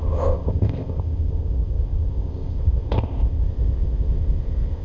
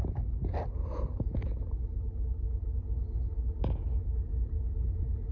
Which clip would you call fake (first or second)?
first